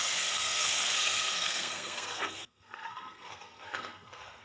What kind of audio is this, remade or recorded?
remade